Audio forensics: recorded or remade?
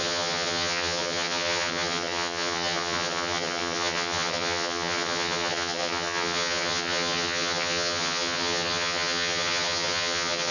remade